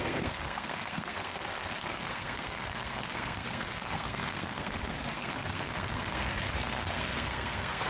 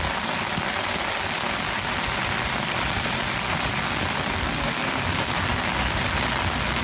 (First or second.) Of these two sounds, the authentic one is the second